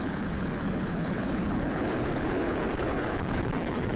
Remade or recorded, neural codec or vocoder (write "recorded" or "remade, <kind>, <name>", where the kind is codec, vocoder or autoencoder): remade, codec, HILCodec